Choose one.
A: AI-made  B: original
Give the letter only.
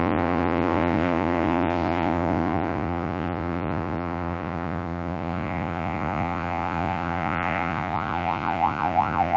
A